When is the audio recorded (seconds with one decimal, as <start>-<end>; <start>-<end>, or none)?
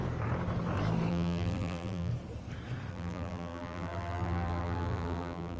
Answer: 0.0-1.1; 2.1-2.9